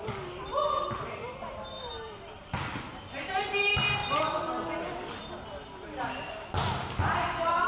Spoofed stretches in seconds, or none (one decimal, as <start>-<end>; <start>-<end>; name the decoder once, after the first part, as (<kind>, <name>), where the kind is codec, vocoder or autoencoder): 0.5-3.1 (vocoder, BigVGAN v2); 4.0-5.2